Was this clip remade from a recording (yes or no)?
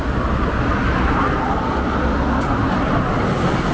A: no